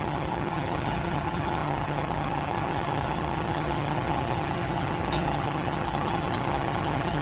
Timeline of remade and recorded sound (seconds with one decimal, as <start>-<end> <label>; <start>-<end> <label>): 0.0-7.2 remade